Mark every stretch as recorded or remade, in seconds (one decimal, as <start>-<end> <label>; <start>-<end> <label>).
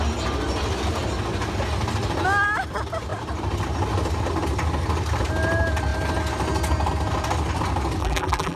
0.0-8.0 recorded; 8.0-8.6 remade